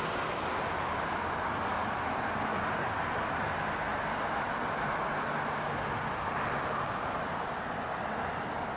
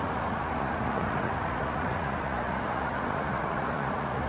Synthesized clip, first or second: second